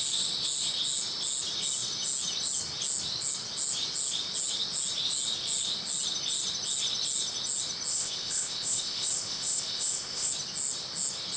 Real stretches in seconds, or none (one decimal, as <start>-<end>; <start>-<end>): 0.0-7.9; 10.3-11.4